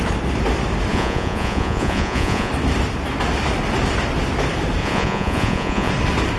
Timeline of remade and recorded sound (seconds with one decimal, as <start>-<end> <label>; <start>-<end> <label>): 0.0-0.9 recorded; 0.9-2.5 remade; 2.5-4.8 recorded; 4.8-5.9 remade; 5.9-6.4 recorded